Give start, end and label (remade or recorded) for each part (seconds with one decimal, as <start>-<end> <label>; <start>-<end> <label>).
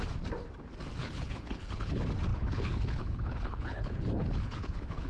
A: 0.0-1.0 recorded; 1.0-1.9 remade; 1.9-2.3 recorded; 2.3-5.1 remade